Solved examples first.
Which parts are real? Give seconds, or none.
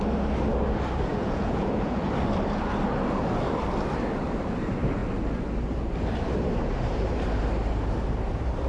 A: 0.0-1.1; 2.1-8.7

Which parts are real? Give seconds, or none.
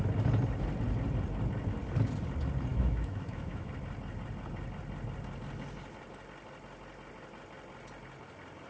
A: 0.0-2.7; 3.7-8.7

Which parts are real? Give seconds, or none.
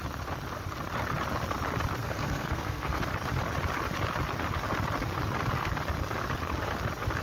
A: 0.0-2.0; 3.0-7.2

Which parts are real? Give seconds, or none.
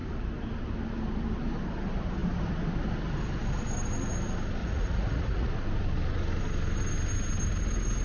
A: 0.0-4.6; 5.5-8.0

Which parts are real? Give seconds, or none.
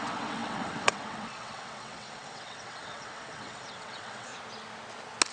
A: 4.3-5.3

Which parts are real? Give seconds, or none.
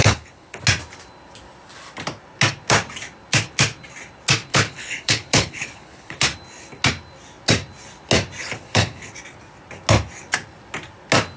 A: 0.6-4.5; 6.2-8.4; 9.1-11.4